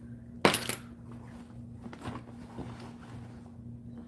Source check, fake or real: real